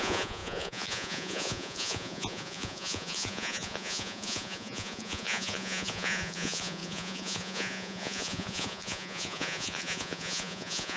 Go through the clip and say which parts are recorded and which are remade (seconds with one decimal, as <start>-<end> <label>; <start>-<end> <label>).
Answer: 0.0-11.0 remade